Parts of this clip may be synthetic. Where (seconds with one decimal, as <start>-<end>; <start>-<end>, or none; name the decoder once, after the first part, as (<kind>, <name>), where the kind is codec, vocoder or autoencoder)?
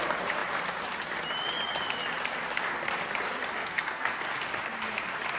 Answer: 3.6-4.2 (codec, SNAC)